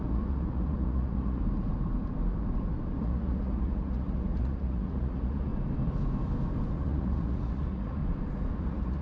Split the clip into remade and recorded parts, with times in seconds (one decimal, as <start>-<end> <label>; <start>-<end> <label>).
0.0-1.4 remade; 1.4-3.0 recorded; 3.0-5.5 remade; 5.5-6.7 recorded; 6.7-8.0 remade; 8.0-8.6 recorded; 8.6-9.0 remade